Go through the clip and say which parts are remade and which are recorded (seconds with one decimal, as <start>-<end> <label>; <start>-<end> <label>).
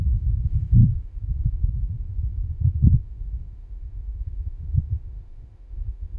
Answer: 0.0-6.2 remade